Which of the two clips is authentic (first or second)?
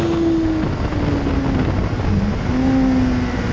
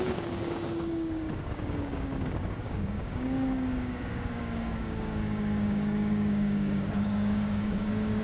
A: first